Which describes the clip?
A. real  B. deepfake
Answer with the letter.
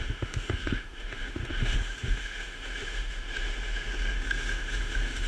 B